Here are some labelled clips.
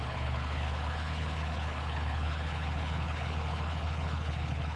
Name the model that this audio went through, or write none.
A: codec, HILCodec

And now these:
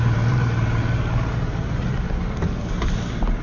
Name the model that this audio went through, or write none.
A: none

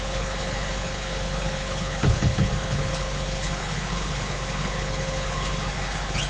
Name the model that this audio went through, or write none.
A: codec, HILCodec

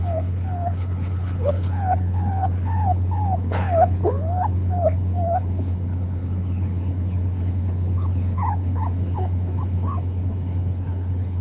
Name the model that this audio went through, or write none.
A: codec, HILCodec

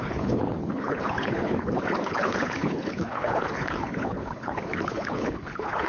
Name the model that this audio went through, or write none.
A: codec, HILCodec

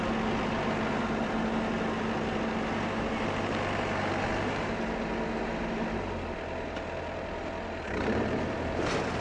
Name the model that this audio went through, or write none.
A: none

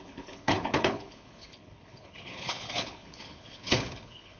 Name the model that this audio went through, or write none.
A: codec, HILCodec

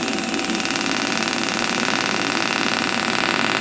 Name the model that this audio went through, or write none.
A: none